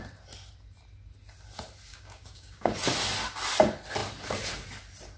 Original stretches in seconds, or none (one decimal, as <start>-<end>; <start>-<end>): 0.0-1.9; 2.7-5.2